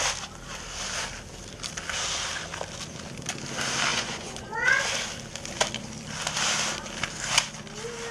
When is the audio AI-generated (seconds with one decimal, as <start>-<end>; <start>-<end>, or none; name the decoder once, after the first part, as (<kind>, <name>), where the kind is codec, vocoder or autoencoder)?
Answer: 3.9-4.8 (vocoder, Vocos)